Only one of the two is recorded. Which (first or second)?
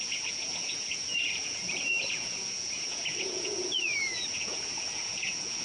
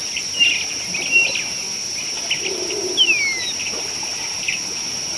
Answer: second